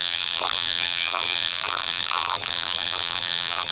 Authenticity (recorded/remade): remade